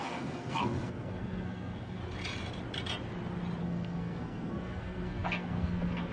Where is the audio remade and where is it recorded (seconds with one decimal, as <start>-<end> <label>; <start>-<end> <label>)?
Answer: 0.0-2.0 remade; 2.0-3.6 recorded; 3.6-6.1 remade

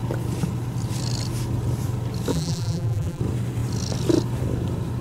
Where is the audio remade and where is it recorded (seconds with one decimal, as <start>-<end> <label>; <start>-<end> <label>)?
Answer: 0.0-2.3 recorded; 2.3-3.2 remade; 3.2-5.0 recorded

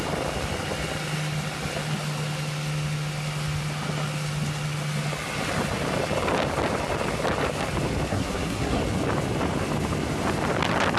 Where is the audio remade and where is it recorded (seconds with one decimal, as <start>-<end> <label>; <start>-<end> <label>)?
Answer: 0.0-8.1 recorded; 8.1-8.8 remade; 8.8-11.0 recorded

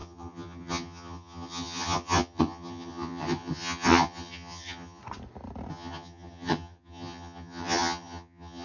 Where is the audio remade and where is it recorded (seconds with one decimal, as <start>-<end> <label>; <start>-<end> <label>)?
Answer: 0.0-5.0 remade; 5.0-5.7 recorded; 5.7-8.6 remade

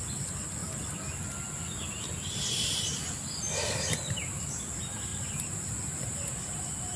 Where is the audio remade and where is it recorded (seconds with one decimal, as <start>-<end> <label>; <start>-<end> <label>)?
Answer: 0.0-7.0 recorded

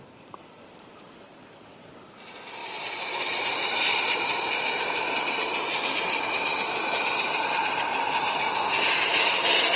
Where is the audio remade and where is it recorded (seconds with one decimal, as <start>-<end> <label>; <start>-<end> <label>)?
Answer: 0.0-2.6 recorded; 2.6-4.0 remade; 4.0-9.8 recorded